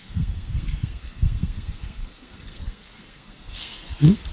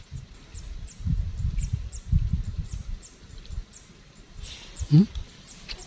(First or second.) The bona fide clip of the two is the second